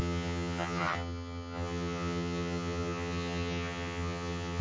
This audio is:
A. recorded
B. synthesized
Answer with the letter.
B